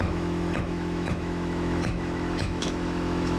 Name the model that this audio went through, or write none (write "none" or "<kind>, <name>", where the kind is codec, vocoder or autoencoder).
autoencoder, DAC-VAE